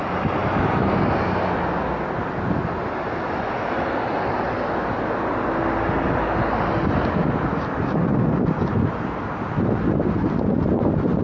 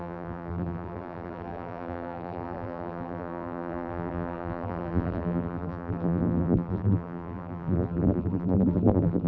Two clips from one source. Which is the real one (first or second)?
first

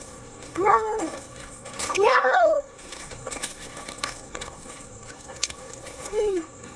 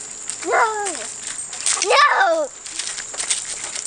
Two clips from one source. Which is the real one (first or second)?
second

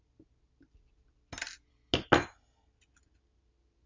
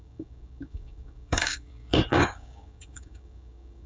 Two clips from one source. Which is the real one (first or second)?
first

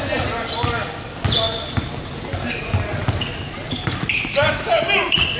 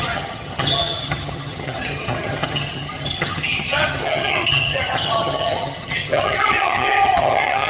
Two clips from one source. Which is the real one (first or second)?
first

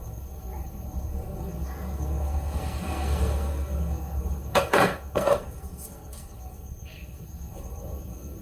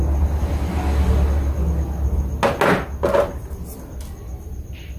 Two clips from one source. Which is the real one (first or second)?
second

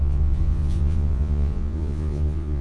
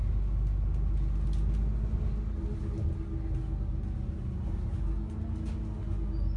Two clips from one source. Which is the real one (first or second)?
second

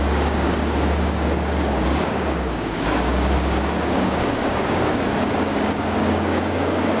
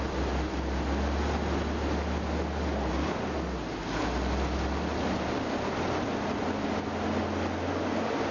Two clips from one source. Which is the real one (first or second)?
second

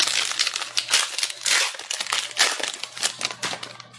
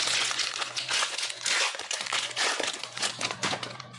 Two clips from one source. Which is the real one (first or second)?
first